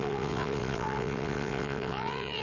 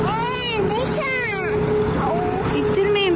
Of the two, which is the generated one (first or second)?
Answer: first